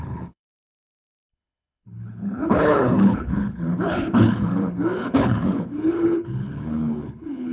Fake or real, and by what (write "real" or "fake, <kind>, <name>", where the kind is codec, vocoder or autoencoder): fake, codec, HILCodec